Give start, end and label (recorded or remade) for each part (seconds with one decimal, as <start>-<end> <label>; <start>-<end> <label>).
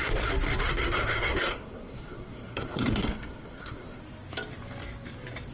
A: 0.0-0.7 recorded; 0.7-4.0 remade; 4.0-5.5 recorded